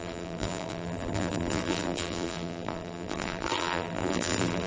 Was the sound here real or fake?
fake